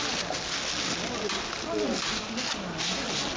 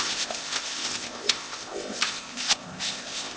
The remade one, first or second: second